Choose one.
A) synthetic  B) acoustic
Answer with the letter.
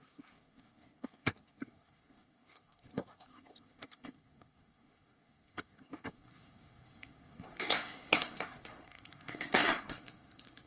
A